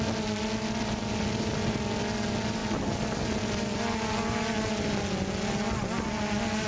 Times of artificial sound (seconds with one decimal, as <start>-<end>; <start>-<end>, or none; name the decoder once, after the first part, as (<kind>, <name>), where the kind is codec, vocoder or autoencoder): none